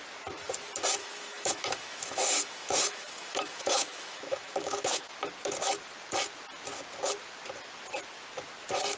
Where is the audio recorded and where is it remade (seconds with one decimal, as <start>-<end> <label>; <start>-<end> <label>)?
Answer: 0.0-1.0 recorded; 1.0-5.1 remade; 5.1-9.0 recorded